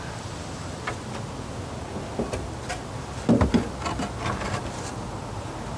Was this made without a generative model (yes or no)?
yes